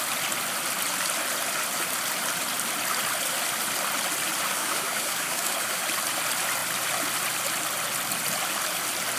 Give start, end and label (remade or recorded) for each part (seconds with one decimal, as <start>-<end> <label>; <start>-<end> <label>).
0.0-4.6 recorded; 4.6-5.8 remade; 5.8-9.2 recorded